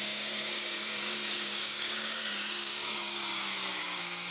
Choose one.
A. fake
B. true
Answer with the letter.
A